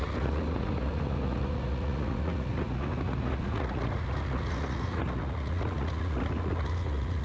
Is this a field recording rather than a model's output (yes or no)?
no